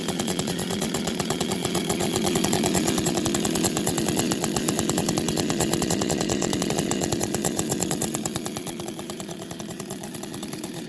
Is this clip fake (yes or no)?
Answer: yes